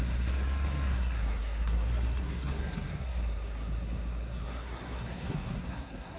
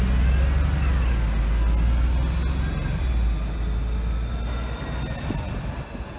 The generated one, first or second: first